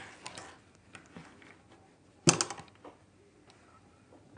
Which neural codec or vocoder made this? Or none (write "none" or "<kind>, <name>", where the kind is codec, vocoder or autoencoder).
none